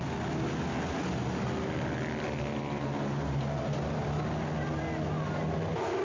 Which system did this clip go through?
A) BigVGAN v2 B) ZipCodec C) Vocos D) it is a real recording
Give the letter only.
D